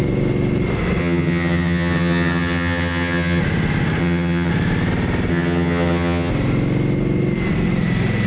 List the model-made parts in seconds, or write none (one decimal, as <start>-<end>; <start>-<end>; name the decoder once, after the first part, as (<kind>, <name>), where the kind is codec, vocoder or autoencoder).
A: 1.0-3.4 (vocoder, HiFi-GAN); 4.0-4.5; 5.3-6.3